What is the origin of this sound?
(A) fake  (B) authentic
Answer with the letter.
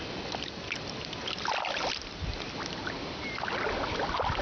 B